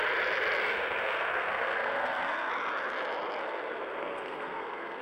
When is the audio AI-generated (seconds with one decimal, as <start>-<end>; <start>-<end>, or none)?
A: 0.6-2.5; 3.4-5.0